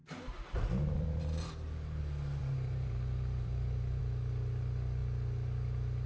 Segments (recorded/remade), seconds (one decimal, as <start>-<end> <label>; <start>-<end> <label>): 0.0-2.0 remade; 2.0-2.4 recorded; 2.4-4.0 remade; 4.0-6.1 recorded